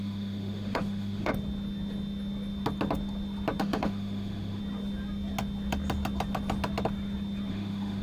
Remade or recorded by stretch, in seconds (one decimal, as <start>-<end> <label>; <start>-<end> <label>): 0.0-1.3 remade; 1.3-3.6 recorded; 3.6-4.6 remade; 4.6-7.5 recorded; 7.5-8.0 remade